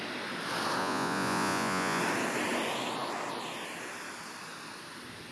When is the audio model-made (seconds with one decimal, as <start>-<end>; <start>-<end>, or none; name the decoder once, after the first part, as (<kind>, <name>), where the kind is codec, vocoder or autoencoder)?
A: 0.8-2.0 (vocoder, Vocos)